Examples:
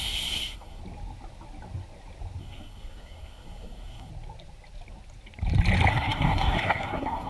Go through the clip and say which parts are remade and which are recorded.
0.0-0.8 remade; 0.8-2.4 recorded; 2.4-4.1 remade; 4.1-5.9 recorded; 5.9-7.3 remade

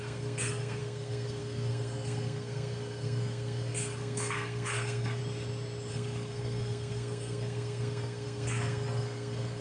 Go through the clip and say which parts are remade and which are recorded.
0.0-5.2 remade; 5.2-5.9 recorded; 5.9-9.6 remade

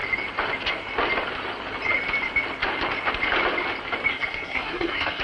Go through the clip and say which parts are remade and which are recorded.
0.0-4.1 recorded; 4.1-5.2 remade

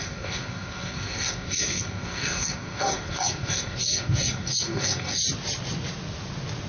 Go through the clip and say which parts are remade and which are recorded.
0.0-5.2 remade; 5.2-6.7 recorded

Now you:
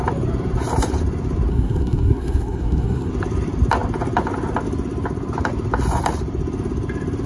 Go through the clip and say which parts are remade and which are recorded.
0.0-1.5 recorded; 1.5-3.1 remade; 3.1-7.3 recorded

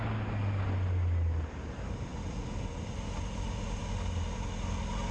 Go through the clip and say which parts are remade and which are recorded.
0.0-5.1 recorded

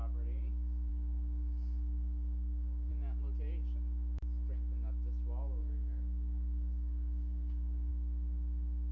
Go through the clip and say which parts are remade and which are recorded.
0.0-0.9 recorded; 0.9-2.9 remade; 2.9-5.6 recorded; 5.6-7.9 remade; 7.9-8.9 recorded

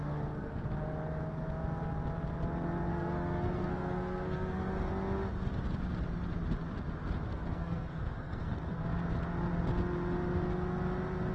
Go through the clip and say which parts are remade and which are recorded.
0.0-0.7 remade; 0.7-2.9 recorded; 2.9-4.9 remade; 4.9-7.3 recorded; 7.3-8.8 remade; 8.8-11.3 recorded